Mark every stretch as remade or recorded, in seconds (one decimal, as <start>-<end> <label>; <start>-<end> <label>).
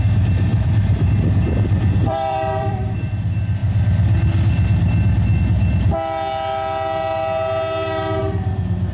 0.0-0.5 recorded; 0.5-3.1 remade; 3.1-8.9 recorded